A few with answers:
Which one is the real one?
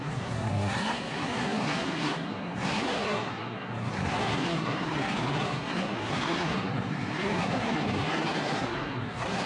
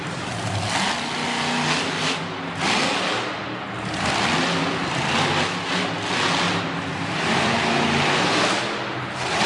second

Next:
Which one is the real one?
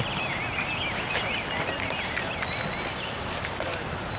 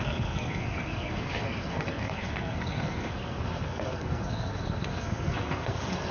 first